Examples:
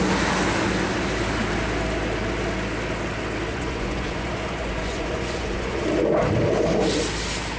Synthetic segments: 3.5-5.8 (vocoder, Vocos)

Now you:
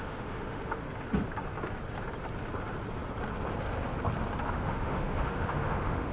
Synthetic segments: 0.0-0.8 (autoencoder, DAC-VAE); 4.5-6.1

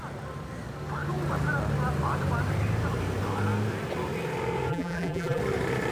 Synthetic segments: 4.7-5.4 (vocoder, BigVGAN v2)

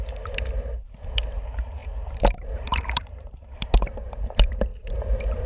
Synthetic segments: 0.0-5.5 (vocoder, BigVGAN v2)

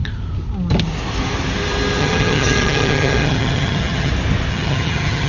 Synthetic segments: 2.0-4.1 (vocoder, HiFi-GAN); 4.5-5.3